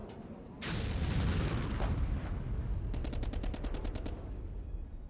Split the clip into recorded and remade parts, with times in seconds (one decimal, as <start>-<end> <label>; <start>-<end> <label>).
0.0-5.1 recorded